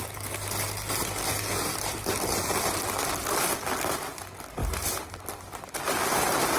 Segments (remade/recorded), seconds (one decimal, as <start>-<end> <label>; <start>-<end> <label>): 0.0-4.6 recorded; 4.6-5.3 remade; 5.3-6.6 recorded